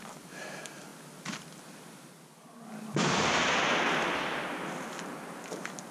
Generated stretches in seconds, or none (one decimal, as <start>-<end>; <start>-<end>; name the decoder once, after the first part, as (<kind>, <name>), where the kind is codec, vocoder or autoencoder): none